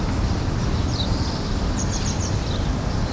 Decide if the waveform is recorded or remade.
remade